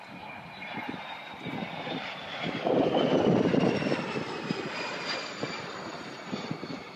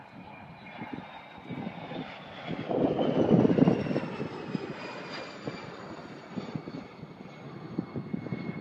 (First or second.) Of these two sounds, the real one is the second